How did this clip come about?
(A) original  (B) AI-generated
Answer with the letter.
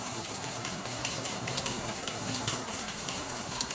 B